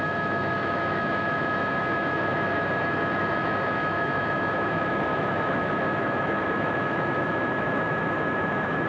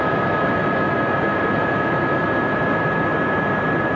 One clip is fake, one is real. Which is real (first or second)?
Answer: second